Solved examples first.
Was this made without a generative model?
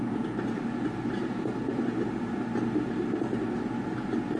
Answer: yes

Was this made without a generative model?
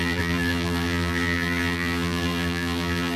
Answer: no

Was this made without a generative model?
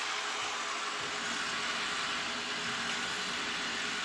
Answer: yes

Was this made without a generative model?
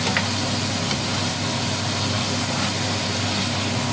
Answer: yes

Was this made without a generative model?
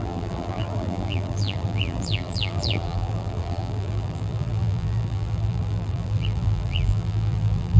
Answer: no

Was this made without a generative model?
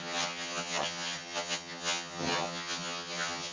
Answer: no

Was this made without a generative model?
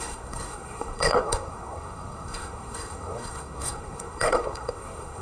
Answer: no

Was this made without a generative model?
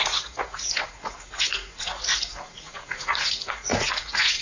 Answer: no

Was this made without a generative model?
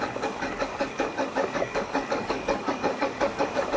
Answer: no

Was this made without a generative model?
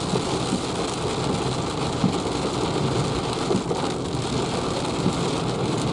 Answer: yes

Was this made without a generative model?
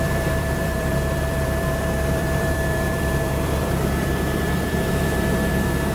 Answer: no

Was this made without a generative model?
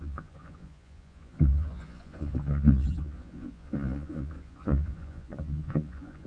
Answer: no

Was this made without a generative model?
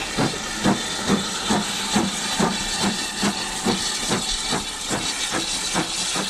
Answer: yes